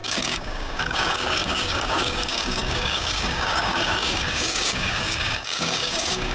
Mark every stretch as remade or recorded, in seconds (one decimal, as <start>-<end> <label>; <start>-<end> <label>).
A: 0.0-6.3 remade